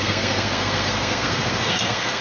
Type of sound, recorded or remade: remade